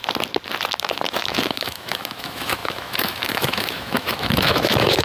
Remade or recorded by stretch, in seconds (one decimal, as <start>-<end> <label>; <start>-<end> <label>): 0.0-0.8 recorded; 0.8-5.0 remade